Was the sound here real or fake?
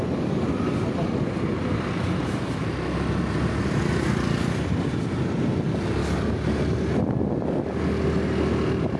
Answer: real